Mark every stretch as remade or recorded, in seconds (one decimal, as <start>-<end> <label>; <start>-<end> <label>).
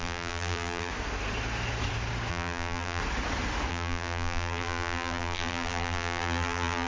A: 0.0-0.9 remade; 0.9-2.3 recorded; 2.3-3.0 remade; 3.0-3.7 recorded; 3.7-6.9 remade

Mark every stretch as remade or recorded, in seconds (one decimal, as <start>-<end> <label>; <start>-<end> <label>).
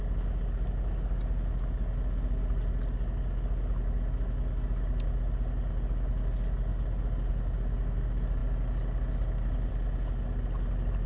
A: 0.0-11.1 recorded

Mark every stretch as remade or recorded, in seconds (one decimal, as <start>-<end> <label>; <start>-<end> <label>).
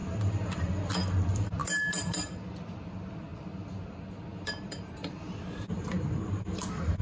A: 0.0-4.3 recorded; 4.3-7.0 remade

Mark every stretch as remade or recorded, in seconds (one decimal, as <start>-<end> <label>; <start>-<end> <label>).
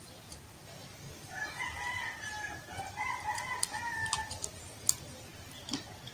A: 0.0-6.1 recorded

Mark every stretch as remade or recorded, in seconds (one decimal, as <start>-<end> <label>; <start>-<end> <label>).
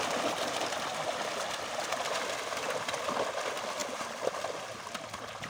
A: 0.0-5.5 recorded